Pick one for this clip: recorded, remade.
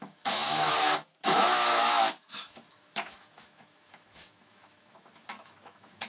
remade